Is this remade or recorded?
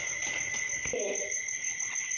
recorded